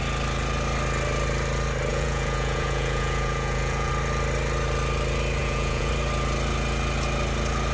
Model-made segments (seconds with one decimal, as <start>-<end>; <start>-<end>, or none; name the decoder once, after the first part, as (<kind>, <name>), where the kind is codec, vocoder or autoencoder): 1.9-3.9 (vocoder, Vocos); 5.4-5.9